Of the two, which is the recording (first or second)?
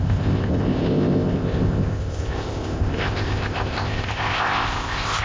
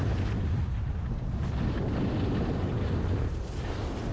second